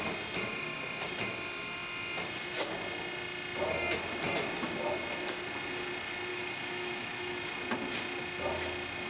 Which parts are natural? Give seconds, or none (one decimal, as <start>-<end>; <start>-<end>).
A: 0.0-6.3; 7.4-9.1